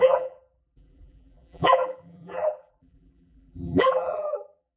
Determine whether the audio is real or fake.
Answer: fake